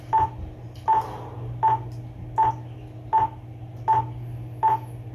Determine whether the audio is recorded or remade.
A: recorded